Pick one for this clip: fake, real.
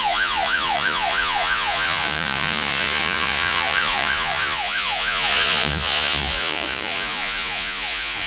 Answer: fake